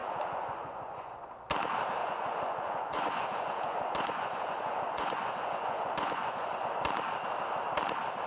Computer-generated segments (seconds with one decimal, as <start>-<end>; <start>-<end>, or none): 0.0-1.3; 2.0-6.6